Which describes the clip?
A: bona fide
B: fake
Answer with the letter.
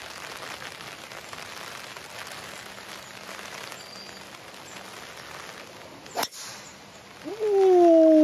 A